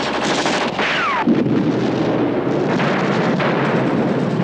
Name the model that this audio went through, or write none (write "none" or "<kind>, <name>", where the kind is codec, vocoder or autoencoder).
none